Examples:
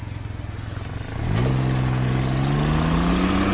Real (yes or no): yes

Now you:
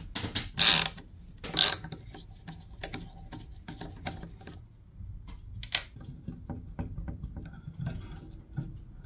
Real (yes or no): yes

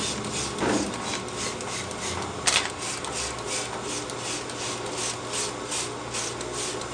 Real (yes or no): yes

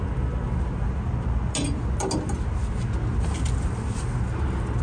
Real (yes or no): yes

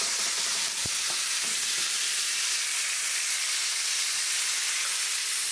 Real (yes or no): yes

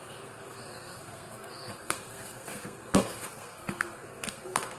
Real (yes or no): no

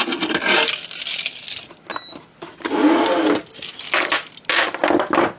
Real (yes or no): yes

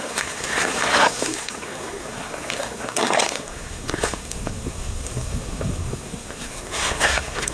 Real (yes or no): no